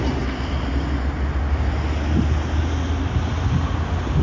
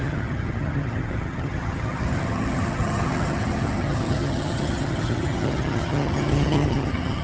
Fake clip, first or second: second